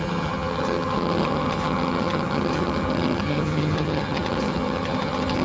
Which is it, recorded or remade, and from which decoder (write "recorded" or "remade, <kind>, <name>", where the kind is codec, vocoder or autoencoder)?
remade, vocoder, HiFi-GAN